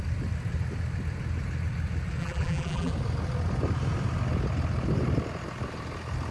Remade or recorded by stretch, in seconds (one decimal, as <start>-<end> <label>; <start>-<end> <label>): 0.0-2.2 recorded; 2.2-2.9 remade; 2.9-6.3 recorded